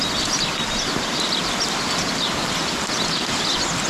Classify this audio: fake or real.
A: real